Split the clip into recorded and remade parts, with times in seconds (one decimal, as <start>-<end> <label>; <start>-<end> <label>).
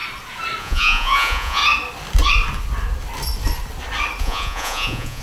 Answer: 0.0-0.6 recorded; 0.6-1.6 remade; 1.6-4.2 recorded; 4.2-5.2 remade